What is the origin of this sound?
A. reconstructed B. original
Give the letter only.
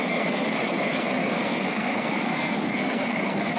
A